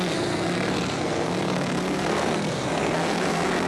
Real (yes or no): no